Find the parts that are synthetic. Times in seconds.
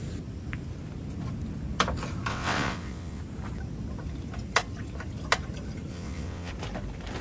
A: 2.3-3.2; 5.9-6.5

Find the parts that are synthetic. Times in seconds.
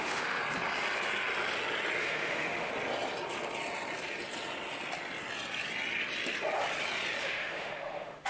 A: 0.0-0.4; 2.0-2.7; 7.2-8.3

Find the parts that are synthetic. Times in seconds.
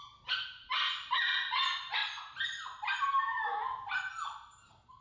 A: 1.3-2.0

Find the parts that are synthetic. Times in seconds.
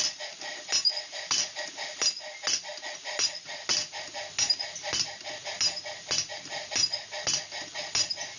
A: none